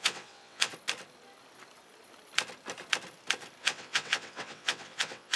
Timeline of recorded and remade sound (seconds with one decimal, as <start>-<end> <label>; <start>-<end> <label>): 0.0-0.7 remade; 0.7-3.6 recorded; 3.6-5.4 remade